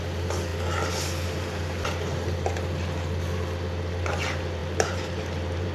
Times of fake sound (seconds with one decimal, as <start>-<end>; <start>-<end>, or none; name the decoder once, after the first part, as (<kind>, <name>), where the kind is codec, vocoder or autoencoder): 4.6-5.7 (vocoder, BigVGAN v2)